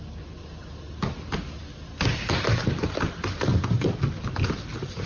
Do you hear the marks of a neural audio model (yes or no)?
no